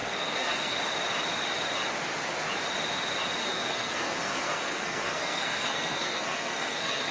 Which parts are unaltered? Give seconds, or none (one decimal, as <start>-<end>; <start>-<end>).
0.8-3.4